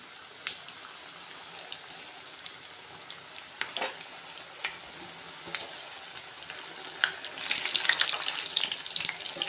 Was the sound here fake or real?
real